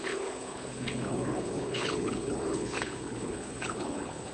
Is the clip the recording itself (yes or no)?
no